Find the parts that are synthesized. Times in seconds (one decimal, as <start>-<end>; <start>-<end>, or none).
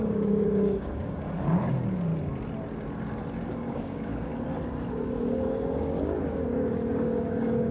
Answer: 0.0-2.1; 3.5-4.3; 4.9-7.7